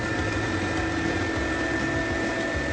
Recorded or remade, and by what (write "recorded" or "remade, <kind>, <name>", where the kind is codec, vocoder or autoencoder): recorded